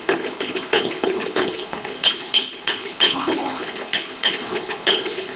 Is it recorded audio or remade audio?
remade